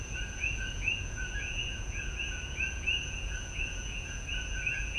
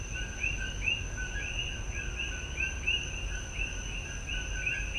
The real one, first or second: second